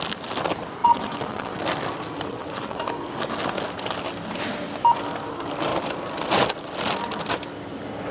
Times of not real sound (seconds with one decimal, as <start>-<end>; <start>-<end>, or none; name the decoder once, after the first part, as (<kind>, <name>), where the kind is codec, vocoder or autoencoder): 0.8-1.6 (vocoder, WaveNeXt); 2.3-2.8